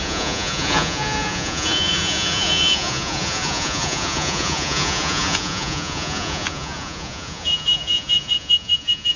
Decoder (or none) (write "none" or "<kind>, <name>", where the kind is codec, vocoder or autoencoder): vocoder, Vocos